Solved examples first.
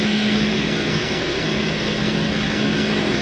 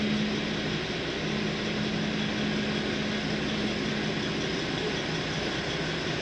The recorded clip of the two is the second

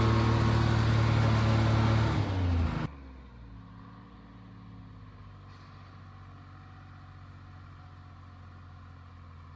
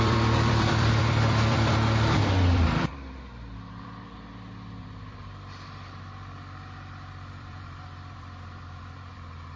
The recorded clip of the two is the first